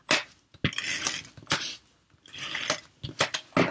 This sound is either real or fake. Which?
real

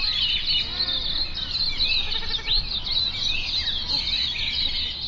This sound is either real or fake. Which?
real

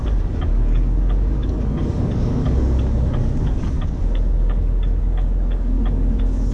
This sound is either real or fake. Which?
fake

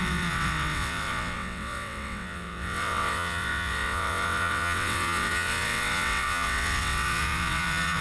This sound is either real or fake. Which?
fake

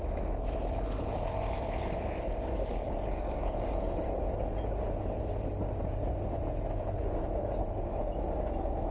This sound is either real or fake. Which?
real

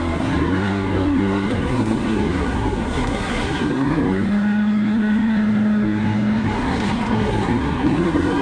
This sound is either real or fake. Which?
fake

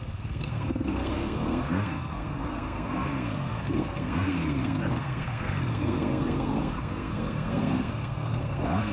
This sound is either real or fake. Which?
fake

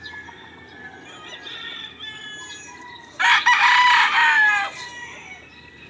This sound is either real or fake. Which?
real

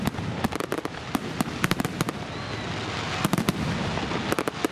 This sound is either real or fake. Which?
real